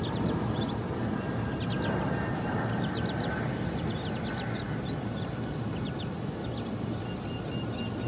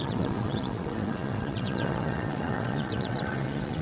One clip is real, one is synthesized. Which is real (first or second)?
first